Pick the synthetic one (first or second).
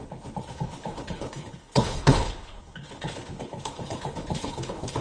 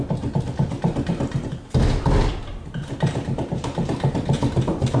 first